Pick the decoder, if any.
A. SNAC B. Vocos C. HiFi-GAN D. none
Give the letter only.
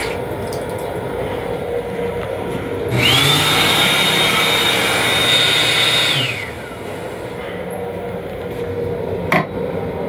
D